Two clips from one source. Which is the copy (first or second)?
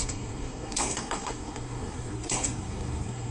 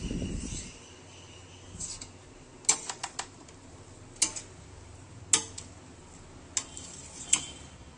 first